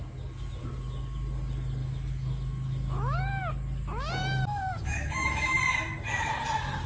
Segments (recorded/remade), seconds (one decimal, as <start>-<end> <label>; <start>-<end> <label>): 0.0-1.8 recorded; 1.8-3.2 remade; 3.2-4.2 recorded; 4.2-5.6 remade; 5.6-6.9 recorded